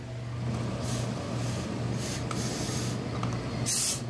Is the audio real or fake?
real